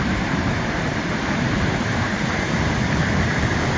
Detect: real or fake fake